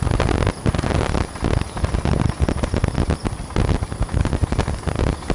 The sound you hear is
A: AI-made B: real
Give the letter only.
B